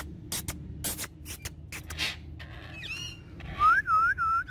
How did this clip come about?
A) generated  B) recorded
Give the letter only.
B